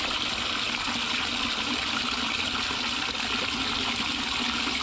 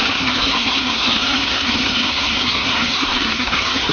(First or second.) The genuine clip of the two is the first